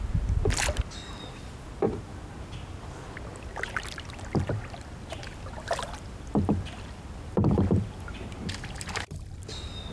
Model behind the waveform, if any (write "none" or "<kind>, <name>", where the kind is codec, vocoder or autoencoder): none